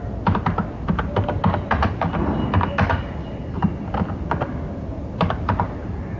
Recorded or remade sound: recorded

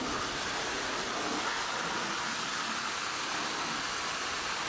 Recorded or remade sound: recorded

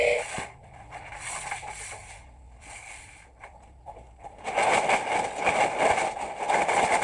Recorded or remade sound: recorded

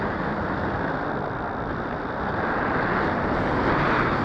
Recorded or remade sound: recorded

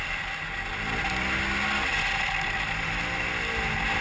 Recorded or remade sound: recorded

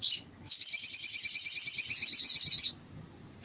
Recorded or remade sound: remade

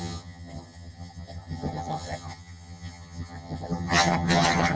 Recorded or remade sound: remade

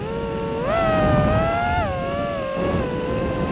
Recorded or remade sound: recorded